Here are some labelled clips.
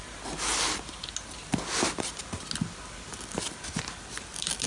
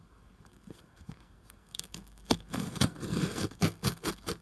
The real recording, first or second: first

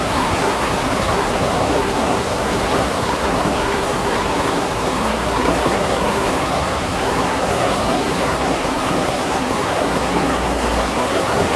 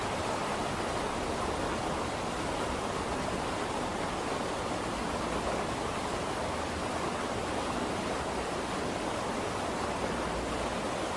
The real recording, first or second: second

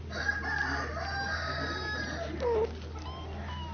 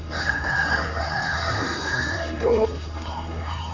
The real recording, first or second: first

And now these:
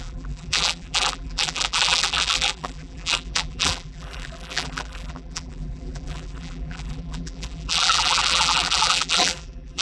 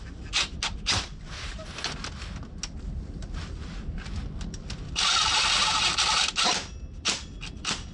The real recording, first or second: second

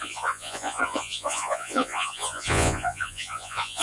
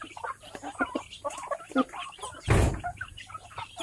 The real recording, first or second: second